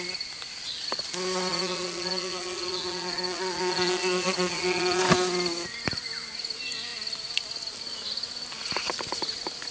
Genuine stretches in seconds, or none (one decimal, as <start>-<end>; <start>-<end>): 0.0-1.5; 5.0-9.7